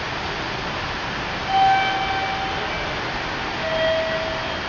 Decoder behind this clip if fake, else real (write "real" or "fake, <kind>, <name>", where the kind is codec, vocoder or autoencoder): real